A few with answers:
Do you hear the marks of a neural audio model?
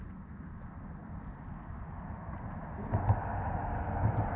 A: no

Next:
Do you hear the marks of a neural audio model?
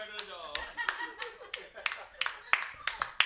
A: no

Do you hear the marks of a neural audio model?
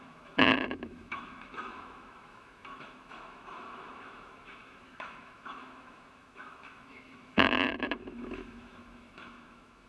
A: yes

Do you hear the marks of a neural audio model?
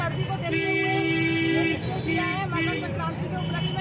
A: no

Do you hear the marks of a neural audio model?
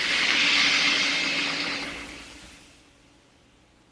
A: no